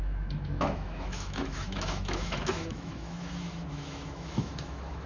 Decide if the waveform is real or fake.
fake